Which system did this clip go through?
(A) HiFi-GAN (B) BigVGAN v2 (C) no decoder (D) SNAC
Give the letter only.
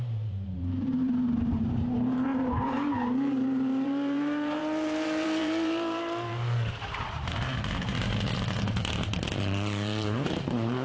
B